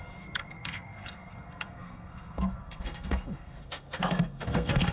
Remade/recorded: remade